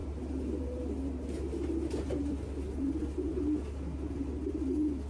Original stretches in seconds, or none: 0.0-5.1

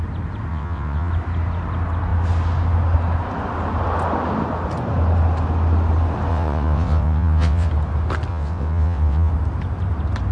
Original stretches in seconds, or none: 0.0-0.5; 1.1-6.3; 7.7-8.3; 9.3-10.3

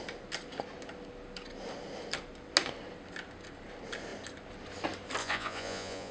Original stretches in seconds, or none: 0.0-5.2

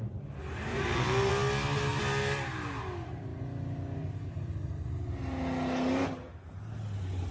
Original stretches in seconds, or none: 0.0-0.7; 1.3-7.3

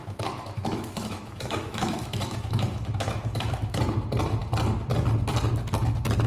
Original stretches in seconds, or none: 3.8-6.3

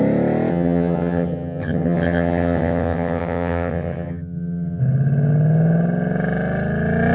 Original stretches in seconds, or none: 0.0-0.5; 4.8-7.1

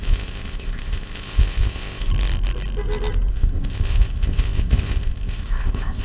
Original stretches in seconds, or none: 2.1-3.3

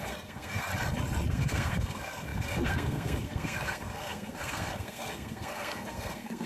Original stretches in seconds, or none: 0.7-1.3